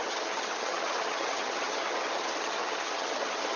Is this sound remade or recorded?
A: remade